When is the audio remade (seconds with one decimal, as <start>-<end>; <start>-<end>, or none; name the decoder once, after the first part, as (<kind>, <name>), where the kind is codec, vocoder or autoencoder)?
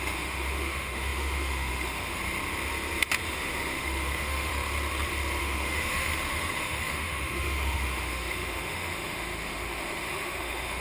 0.0-2.2 (autoencoder, DAC-VAE); 3.3-4.5; 5.4-10.8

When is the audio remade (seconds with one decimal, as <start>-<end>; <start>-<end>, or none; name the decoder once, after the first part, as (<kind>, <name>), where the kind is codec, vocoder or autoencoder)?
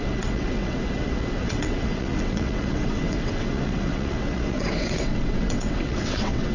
0.0-6.5 (vocoder, WaveNeXt)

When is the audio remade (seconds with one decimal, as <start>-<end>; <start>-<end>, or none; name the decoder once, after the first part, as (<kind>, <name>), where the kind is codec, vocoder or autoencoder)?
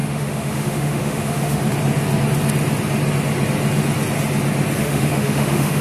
0.0-1.6 (autoencoder, DAC-VAE); 4.8-5.8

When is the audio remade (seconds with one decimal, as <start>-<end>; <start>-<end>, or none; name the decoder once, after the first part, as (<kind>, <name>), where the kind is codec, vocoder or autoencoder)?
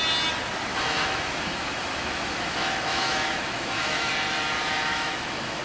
0.7-4.1 (autoencoder, DAC-VAE); 4.9-5.6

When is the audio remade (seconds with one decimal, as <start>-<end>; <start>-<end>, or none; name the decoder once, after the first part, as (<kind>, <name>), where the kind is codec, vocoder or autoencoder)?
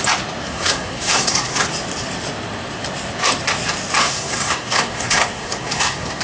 0.4-1.6 (codec, SNAC); 4.0-6.2